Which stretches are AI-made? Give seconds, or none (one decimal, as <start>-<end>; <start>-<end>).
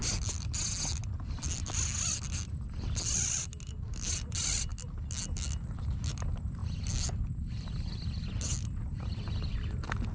none